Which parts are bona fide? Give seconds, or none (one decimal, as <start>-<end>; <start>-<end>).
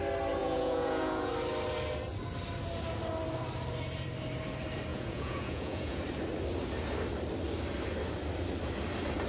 0.0-0.4; 1.3-4.9; 6.0-9.3